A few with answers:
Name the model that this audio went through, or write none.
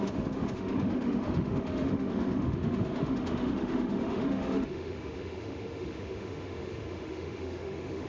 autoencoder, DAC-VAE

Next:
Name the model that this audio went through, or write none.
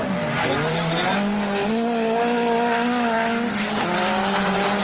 none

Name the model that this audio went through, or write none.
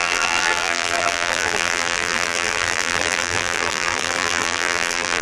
vocoder, BigVGAN v2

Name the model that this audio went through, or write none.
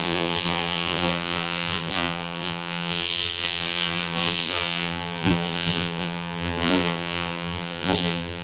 vocoder, BigVGAN v2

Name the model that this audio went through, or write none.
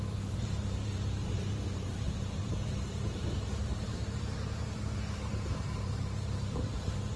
vocoder, BigVGAN v2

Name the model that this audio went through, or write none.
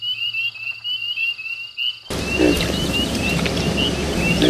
none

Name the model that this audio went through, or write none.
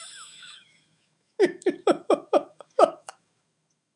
autoencoder, DAC-VAE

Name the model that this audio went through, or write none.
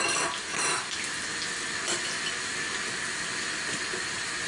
none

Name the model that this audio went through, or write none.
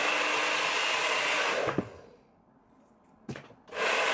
none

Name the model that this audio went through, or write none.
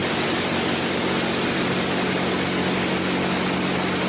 none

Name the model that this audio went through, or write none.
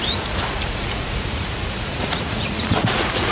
vocoder, Vocos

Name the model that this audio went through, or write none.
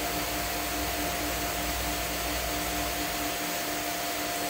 none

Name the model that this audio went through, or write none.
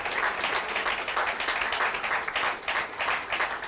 none